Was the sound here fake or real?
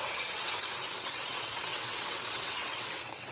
fake